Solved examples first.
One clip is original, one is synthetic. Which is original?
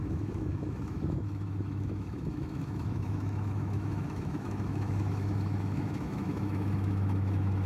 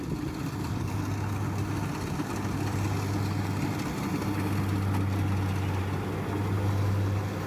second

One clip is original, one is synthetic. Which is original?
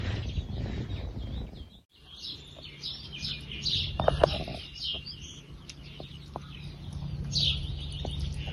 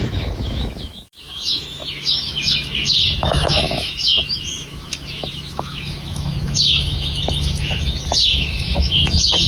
first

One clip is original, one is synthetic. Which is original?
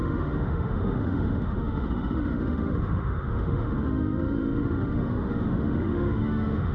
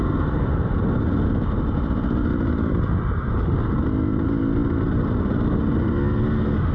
second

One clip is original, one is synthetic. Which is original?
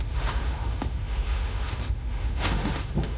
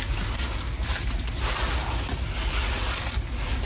second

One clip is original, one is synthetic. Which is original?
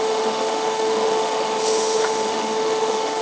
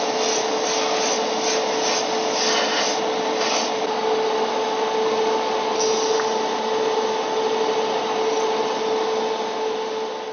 second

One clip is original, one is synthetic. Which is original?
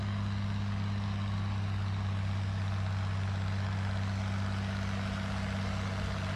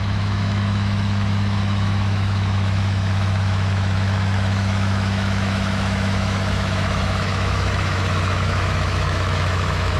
first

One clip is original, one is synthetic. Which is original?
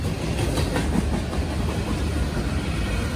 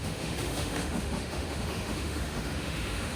first